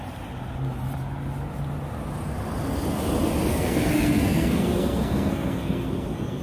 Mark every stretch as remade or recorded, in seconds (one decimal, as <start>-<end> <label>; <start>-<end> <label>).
0.0-3.5 recorded; 3.5-6.4 remade